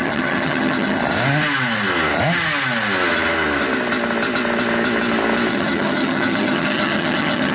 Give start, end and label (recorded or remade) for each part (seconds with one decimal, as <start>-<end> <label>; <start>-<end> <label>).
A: 0.0-1.0 remade; 1.0-5.5 recorded; 5.5-7.5 remade